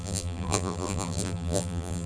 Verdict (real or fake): fake